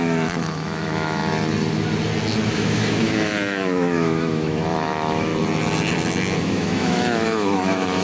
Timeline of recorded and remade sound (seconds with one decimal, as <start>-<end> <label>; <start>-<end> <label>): 0.0-1.2 remade; 1.2-2.5 recorded; 2.5-5.3 remade; 5.3-6.4 recorded; 6.4-8.0 remade